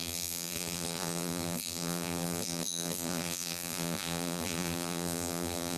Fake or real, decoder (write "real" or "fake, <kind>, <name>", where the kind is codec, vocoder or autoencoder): fake, vocoder, BigVGAN v2